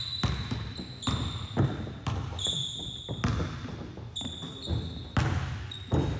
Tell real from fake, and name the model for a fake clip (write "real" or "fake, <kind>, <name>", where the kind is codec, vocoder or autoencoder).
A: real